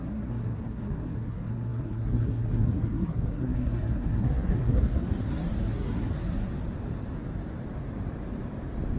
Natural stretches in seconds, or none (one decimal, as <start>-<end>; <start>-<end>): 6.5-9.0